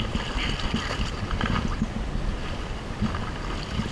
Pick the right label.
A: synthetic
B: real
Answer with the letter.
B